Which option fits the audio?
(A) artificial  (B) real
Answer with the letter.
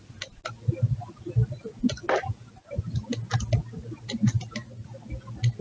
B